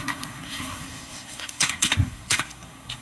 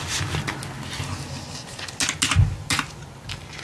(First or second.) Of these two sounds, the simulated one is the first